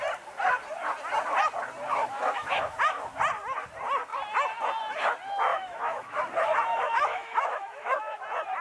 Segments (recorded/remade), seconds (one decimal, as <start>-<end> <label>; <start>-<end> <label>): 0.0-2.0 recorded; 2.0-3.0 remade; 3.0-5.5 recorded; 5.5-6.2 remade; 6.2-6.7 recorded; 6.7-8.2 remade; 8.2-8.6 recorded